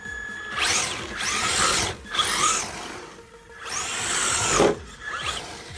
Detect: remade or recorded recorded